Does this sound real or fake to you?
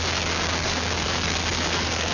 fake